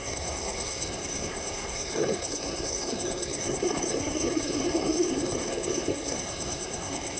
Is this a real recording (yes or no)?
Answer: no